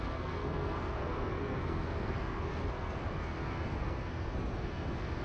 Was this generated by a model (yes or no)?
yes